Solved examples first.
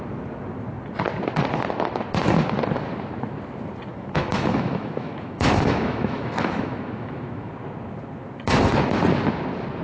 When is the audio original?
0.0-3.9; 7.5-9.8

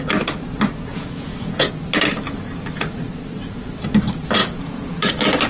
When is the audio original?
0.0-0.9; 1.7-4.4; 5.1-5.5